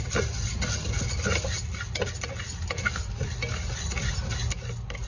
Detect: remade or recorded recorded